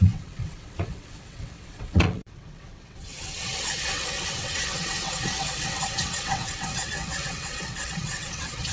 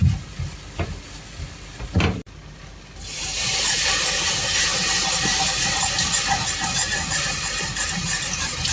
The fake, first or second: first